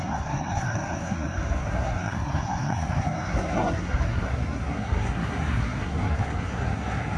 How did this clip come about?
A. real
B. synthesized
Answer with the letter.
B